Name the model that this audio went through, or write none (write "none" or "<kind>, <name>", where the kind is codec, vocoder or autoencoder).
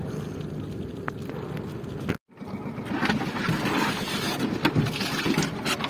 none